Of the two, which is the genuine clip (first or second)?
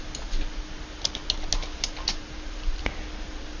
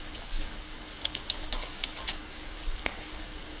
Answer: first